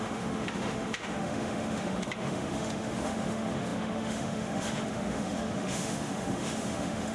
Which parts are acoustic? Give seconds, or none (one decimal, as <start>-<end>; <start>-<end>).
none